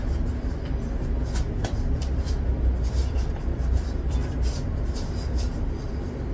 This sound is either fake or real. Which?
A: fake